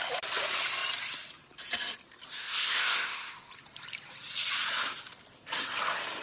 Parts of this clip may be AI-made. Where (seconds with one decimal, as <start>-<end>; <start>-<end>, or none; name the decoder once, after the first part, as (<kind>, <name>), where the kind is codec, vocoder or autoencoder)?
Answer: 2.3-3.5 (codec, ZipCodec)